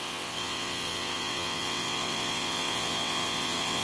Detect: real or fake fake